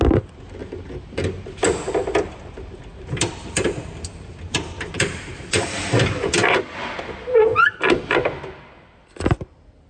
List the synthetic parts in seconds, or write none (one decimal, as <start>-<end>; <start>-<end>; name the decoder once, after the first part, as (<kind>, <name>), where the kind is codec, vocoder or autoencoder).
none

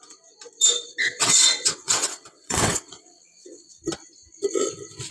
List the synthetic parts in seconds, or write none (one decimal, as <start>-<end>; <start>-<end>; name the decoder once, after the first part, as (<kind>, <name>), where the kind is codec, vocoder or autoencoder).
1.0-3.8 (vocoder, WaveNeXt)

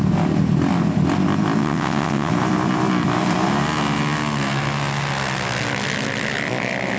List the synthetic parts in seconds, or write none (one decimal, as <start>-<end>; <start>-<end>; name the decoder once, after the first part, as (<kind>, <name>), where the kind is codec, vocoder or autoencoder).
1.6-2.3 (vocoder, WaveNeXt)

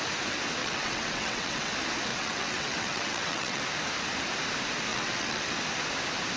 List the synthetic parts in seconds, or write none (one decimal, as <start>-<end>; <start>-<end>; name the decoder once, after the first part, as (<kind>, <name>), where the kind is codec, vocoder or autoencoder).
0.6-1.7 (vocoder, WaveNeXt); 2.1-3.6; 4.9-5.5

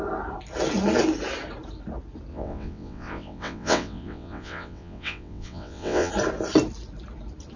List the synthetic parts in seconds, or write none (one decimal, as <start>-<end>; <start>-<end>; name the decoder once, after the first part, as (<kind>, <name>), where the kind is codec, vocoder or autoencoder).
2.3-6.1 (vocoder, WaveNeXt)

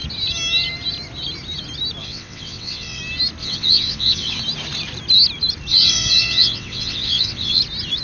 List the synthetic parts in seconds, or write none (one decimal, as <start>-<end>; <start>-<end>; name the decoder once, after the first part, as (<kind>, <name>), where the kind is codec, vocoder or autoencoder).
2.0-3.0 (vocoder, WaveNeXt); 3.4-4.4; 5.7-7.6

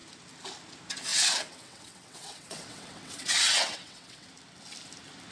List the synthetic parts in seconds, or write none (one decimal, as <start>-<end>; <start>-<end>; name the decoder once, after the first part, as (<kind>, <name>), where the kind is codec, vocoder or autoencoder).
1.1-4.3 (vocoder, WaveNeXt)

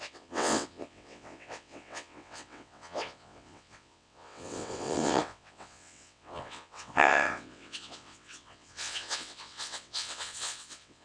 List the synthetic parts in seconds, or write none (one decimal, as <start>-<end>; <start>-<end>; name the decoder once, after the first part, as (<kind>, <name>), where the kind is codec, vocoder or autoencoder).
0.0-11.0 (vocoder, WaveNeXt)